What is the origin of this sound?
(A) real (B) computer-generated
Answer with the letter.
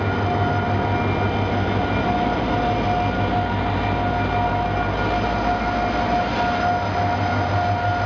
A